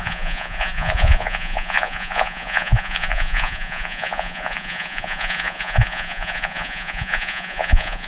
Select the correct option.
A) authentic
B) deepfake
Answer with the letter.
B